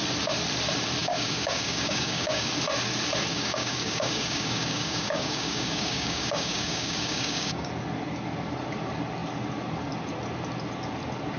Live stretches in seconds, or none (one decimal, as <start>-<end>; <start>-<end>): 0.0-1.0; 2.5-3.3; 7.7-11.4